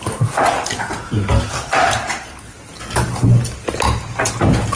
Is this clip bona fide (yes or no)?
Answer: yes